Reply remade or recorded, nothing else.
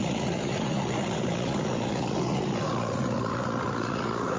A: remade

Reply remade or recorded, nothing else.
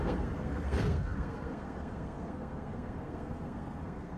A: remade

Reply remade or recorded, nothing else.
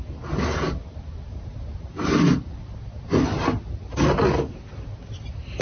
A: recorded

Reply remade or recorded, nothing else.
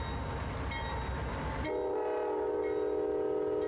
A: recorded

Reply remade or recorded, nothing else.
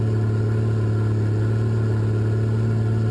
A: recorded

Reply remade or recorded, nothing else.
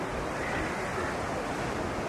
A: recorded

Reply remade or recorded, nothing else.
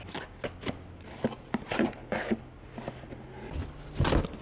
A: recorded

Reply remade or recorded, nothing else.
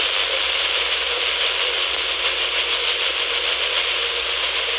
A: recorded